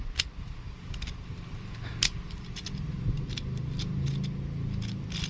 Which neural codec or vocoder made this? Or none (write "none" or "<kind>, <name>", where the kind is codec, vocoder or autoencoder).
none